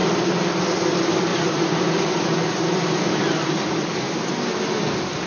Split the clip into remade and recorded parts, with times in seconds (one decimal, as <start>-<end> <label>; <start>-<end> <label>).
0.0-1.3 recorded; 1.3-4.5 remade; 4.5-5.3 recorded